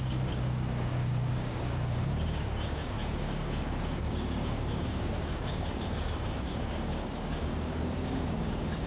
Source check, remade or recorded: remade